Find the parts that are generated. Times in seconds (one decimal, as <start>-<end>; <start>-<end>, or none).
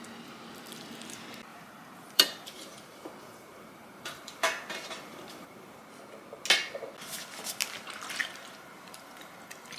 1.5-5.8; 8.2-9.8